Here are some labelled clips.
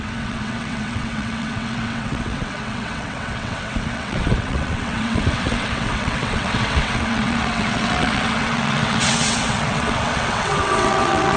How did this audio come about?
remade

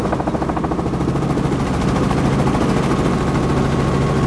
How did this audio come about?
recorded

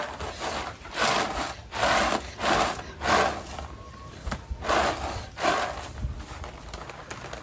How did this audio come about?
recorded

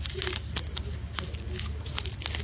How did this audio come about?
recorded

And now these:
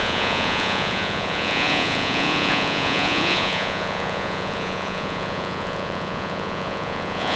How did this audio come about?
remade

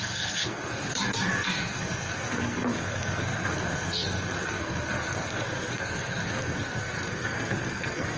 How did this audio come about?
remade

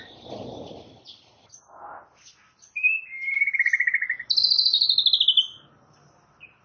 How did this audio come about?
recorded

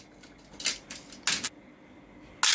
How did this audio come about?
recorded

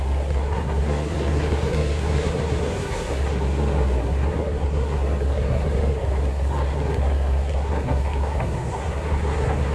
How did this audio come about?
remade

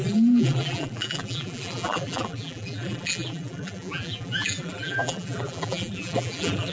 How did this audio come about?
remade